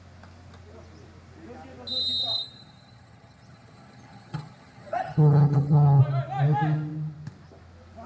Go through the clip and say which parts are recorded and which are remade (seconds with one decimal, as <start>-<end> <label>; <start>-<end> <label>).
0.0-2.2 recorded; 2.2-6.0 remade; 6.0-8.1 recorded